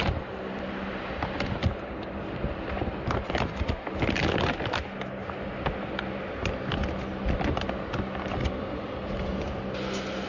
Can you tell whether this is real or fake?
real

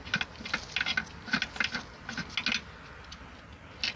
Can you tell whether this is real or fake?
real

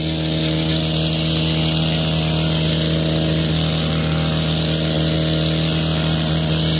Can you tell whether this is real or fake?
real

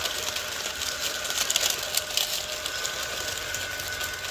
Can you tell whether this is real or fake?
real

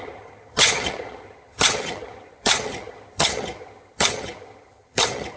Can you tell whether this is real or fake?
fake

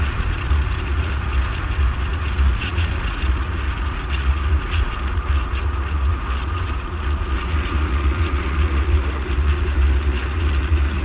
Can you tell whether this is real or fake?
fake